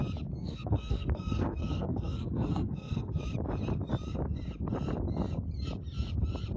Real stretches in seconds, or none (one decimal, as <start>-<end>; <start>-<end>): 0.0-0.4; 3.2-6.6